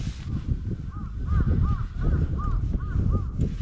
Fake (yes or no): no